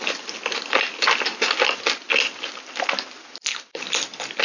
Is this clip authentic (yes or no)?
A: yes